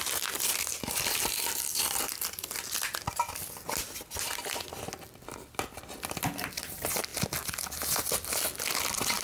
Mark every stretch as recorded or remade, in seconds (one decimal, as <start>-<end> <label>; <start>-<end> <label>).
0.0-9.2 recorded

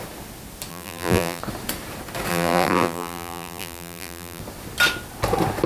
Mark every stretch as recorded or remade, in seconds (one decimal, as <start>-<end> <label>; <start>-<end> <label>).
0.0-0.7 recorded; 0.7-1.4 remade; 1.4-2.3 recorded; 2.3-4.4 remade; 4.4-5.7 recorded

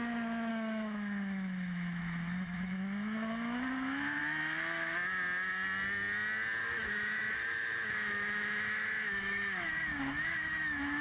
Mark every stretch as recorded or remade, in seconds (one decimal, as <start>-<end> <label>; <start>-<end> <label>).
0.0-0.5 recorded; 0.5-4.2 remade; 4.2-6.6 recorded; 6.6-11.0 remade

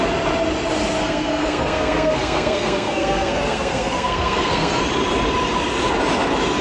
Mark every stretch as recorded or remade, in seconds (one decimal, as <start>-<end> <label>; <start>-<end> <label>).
0.0-1.0 recorded; 1.0-4.8 remade; 4.8-6.6 recorded